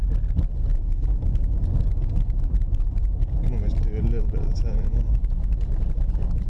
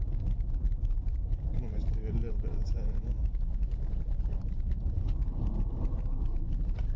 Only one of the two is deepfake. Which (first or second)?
second